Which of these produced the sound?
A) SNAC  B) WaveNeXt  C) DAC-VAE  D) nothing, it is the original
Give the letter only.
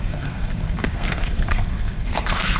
A